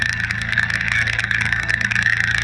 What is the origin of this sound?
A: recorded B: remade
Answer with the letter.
B